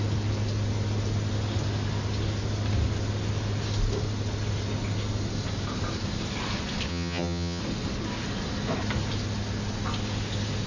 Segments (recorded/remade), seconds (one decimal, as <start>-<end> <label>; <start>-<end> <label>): 0.0-6.9 recorded; 6.9-7.6 remade; 7.6-10.7 recorded